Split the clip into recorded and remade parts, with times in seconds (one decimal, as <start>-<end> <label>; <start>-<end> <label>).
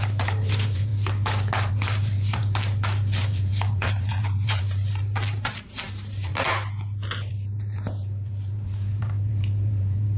0.0-0.9 remade; 0.9-1.7 recorded; 1.7-2.4 remade; 2.4-3.0 recorded; 3.0-6.3 remade; 6.3-7.3 recorded; 7.3-10.2 remade